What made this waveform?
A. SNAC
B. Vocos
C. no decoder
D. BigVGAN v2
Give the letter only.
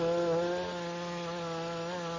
C